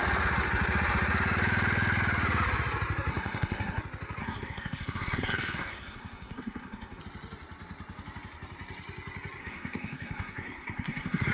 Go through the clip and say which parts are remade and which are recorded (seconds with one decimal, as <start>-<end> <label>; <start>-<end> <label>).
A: 0.0-3.1 recorded; 3.1-3.8 remade; 3.8-4.2 recorded; 4.2-7.0 remade; 7.0-9.4 recorded; 9.4-11.3 remade